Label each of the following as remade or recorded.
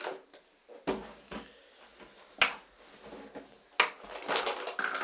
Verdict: recorded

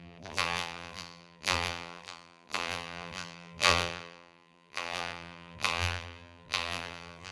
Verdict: remade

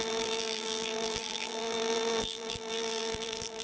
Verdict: remade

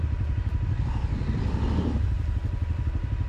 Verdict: recorded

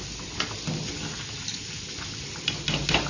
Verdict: recorded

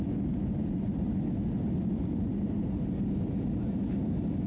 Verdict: recorded